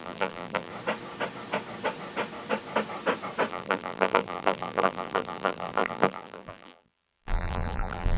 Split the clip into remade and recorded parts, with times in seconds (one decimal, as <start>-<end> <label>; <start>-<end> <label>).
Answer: 0.0-0.7 remade; 0.7-3.5 recorded; 3.5-8.2 remade